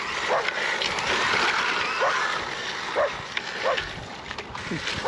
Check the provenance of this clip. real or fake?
real